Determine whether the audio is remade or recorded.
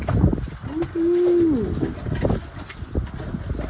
recorded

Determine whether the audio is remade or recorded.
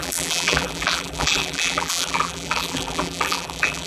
remade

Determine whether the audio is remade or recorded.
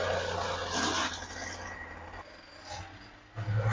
recorded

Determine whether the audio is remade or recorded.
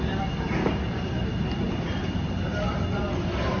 recorded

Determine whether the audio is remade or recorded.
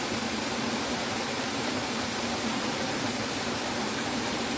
remade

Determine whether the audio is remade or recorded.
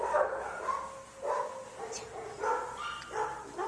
recorded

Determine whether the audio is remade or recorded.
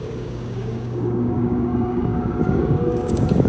remade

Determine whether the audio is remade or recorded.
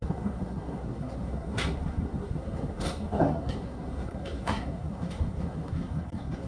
remade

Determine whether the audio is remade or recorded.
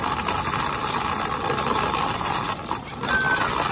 recorded